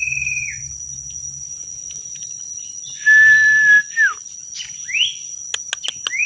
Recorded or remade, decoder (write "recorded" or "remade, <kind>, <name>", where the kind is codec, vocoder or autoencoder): recorded